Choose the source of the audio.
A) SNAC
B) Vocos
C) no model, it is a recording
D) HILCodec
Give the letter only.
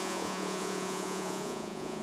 B